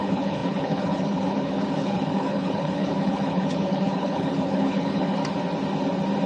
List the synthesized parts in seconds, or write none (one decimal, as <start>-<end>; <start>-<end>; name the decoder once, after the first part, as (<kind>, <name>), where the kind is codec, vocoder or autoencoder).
0.0-5.2 (codec, HILCodec)